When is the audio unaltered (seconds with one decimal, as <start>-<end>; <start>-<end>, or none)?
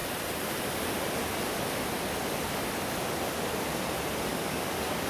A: 0.0-4.3